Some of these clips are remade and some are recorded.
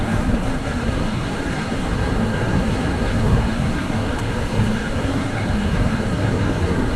remade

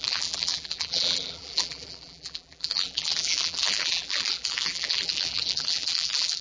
remade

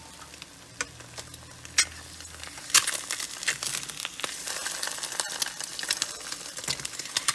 recorded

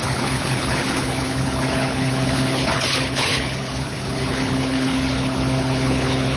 remade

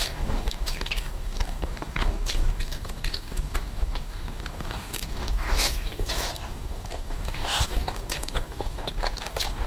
remade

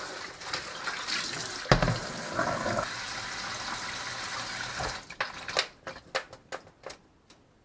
recorded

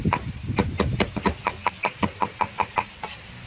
recorded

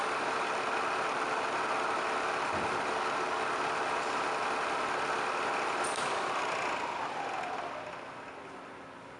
recorded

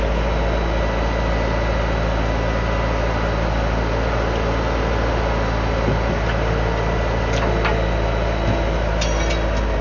recorded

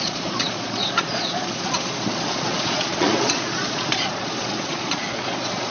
remade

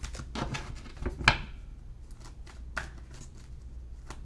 recorded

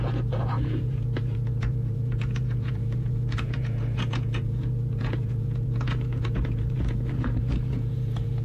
remade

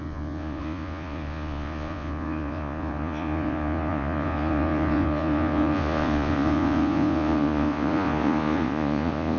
remade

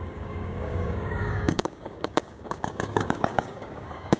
remade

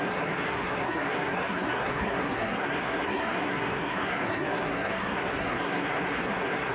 remade